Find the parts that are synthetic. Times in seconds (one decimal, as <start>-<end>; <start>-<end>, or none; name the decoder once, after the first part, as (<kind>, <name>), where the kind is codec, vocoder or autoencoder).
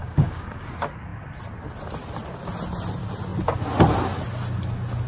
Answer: 0.0-0.7 (codec, DAC)